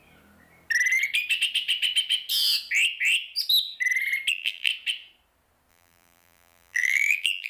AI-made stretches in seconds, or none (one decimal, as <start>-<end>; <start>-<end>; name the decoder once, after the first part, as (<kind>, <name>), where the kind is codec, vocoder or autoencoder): 4.3-4.7 (vocoder, BigVGAN v2); 5.7-7.5